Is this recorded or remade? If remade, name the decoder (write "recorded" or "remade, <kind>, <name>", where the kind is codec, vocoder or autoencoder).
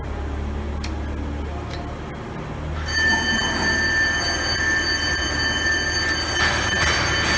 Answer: recorded